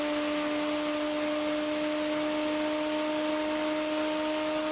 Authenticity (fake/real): real